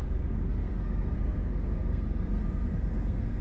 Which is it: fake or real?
fake